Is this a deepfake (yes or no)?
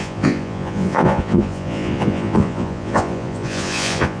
yes